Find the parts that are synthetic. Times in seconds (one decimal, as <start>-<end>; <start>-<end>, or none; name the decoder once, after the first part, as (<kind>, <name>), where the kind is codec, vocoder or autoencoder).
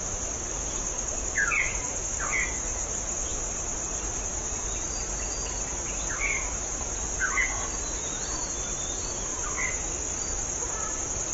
none